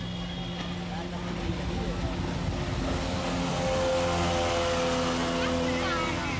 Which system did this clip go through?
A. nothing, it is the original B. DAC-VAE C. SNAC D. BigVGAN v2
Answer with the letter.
A